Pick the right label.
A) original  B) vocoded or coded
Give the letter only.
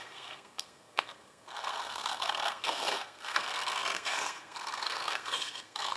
B